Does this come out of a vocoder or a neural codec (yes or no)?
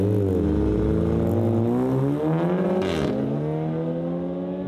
no